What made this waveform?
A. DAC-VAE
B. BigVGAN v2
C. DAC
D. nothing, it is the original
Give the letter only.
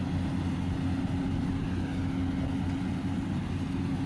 D